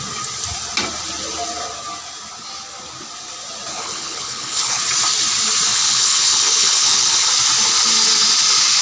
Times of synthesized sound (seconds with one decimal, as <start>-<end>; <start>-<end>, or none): 3.7-4.8; 5.7-7.3